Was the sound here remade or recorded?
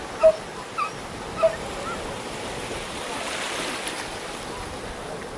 recorded